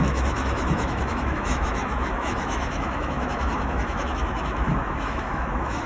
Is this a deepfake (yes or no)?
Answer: yes